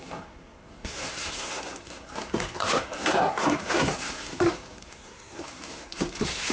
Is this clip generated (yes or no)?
yes